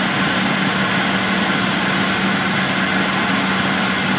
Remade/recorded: recorded